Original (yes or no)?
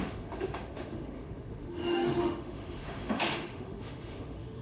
no